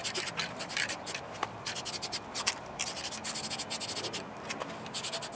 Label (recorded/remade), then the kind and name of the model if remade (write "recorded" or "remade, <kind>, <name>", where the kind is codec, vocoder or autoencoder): recorded